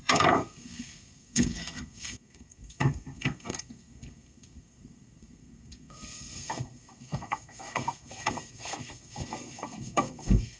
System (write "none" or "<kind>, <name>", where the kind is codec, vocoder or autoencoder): codec, SNAC